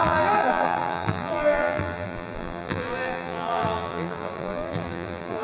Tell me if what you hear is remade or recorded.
remade